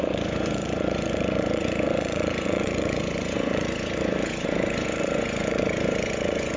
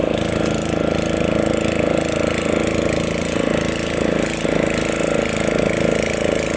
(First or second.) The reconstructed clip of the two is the first